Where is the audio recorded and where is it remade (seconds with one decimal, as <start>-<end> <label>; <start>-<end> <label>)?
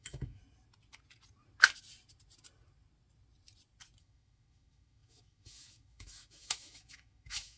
0.0-0.4 remade; 0.4-4.0 recorded; 4.0-7.6 remade